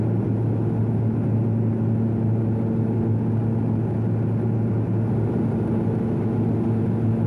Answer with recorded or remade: recorded